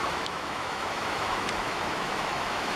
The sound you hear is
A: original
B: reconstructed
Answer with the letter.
B